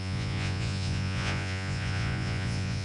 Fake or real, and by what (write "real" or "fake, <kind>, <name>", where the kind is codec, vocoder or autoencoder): fake, vocoder, Vocos